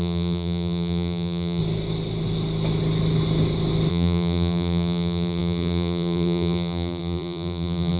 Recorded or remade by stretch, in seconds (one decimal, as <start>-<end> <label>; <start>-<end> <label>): 0.0-1.6 remade; 1.6-3.9 recorded; 3.9-8.0 remade